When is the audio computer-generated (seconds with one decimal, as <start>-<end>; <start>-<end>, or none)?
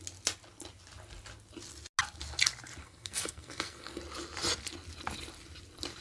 2.8-4.0